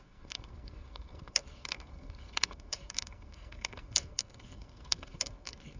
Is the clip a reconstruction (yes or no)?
yes